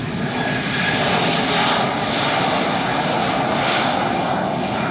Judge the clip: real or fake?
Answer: real